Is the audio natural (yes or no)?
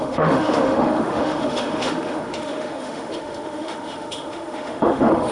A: no